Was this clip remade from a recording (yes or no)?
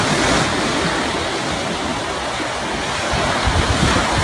no